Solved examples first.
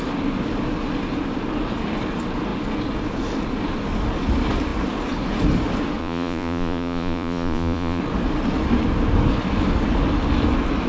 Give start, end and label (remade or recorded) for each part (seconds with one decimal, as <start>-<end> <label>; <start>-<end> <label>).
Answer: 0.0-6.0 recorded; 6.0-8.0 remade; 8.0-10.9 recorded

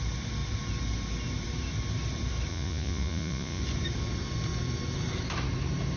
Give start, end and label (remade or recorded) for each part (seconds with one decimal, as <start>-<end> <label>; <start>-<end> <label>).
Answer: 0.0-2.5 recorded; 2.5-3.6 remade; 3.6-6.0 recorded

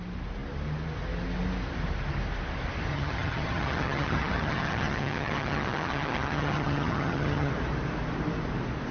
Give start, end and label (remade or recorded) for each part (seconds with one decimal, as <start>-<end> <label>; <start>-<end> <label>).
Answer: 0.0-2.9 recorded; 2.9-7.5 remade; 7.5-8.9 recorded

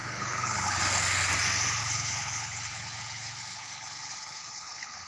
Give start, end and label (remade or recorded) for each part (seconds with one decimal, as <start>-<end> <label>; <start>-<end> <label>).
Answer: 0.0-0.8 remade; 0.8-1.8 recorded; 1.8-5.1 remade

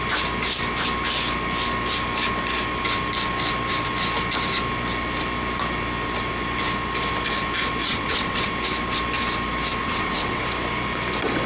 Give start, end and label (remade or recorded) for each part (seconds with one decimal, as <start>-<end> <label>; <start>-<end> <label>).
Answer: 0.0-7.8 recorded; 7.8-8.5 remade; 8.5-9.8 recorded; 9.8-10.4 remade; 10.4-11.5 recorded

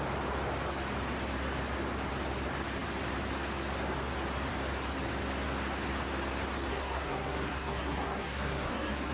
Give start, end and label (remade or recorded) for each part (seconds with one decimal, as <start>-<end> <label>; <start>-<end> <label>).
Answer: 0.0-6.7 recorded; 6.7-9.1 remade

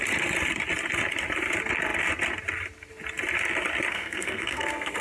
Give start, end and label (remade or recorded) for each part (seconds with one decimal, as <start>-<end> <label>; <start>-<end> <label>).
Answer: 0.0-3.9 recorded; 3.9-5.0 remade